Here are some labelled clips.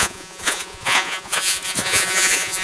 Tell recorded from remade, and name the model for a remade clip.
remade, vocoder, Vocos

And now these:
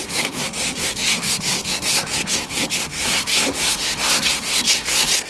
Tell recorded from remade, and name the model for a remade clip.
remade, codec, SNAC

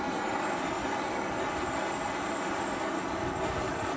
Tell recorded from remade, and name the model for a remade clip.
recorded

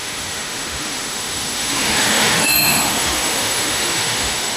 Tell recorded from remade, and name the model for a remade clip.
remade, autoencoder, DAC-VAE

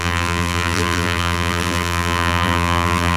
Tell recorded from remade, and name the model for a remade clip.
remade, vocoder, BigVGAN v2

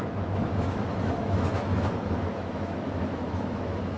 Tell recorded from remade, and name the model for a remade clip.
remade, autoencoder, DAC-VAE